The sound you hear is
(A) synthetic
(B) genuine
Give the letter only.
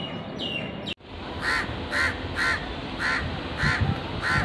B